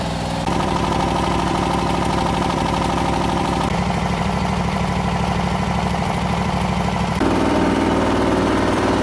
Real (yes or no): no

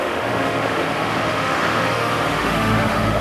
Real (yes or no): no